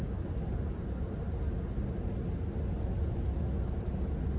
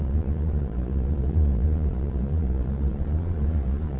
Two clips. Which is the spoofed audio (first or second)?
second